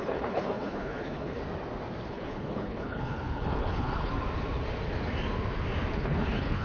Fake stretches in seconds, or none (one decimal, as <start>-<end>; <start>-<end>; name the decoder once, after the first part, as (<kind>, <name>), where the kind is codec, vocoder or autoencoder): 0.0-1.4 (codec, HILCodec); 2.1-4.1; 5.9-6.6